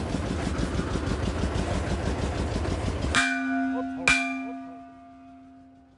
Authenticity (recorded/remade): recorded